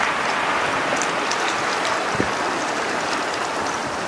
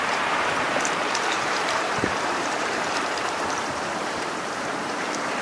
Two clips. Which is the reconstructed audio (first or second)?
second